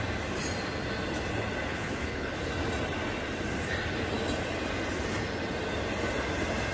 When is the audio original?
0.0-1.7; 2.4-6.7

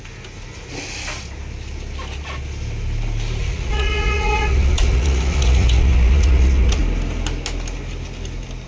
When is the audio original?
0.0-3.4; 6.8-8.7

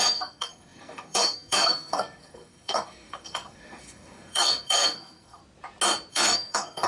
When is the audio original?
5.4-6.1

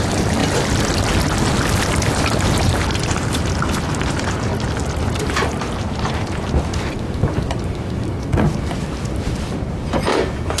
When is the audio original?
0.4-1.9; 4.5-5.0; 6.7-9.1

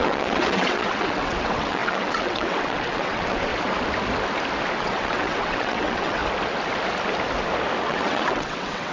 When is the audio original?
3.5-4.8; 6.2-7.8

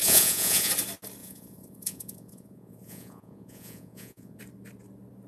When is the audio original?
0.7-1.2; 4.4-5.3

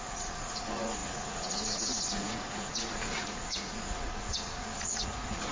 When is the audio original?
none